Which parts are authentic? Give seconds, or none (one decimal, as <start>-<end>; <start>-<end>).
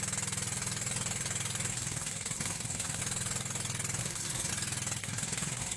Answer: 0.0-1.7; 3.0-4.0; 4.5-5.0